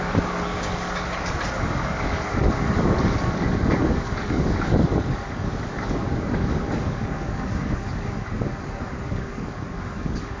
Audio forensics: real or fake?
fake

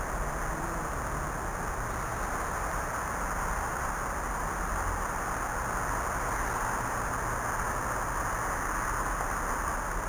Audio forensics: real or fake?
real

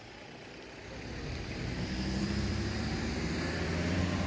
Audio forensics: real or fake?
fake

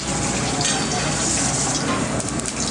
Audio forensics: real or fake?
real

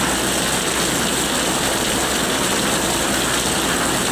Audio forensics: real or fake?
real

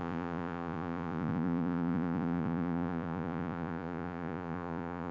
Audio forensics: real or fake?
fake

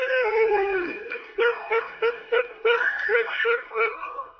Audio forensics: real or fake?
fake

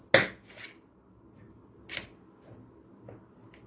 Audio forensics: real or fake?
real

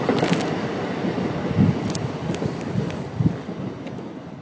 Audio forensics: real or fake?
real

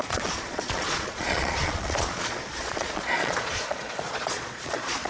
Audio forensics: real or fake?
fake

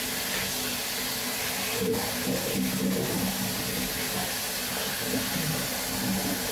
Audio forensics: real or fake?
real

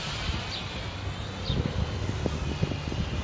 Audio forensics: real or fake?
real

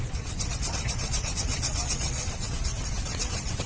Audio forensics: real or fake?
fake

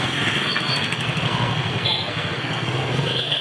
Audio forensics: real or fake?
fake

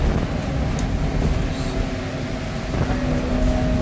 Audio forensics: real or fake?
real